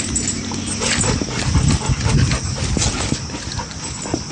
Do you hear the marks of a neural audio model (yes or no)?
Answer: no